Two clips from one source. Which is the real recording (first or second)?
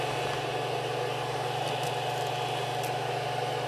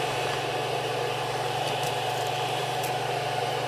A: first